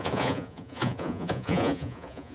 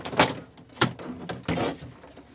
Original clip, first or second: second